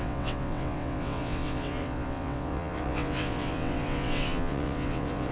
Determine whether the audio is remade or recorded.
remade